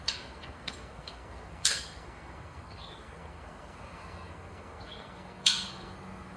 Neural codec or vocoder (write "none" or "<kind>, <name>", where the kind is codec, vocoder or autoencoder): codec, SNAC